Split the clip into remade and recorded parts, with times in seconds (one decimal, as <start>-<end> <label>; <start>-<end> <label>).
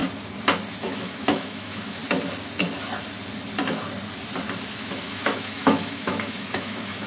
0.0-0.8 recorded; 0.8-2.0 remade; 2.0-4.7 recorded; 4.7-7.1 remade